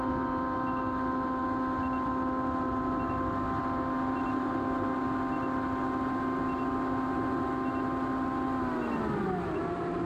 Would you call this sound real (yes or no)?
yes